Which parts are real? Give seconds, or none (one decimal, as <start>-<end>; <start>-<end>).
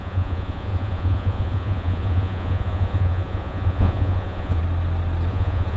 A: 4.6-5.3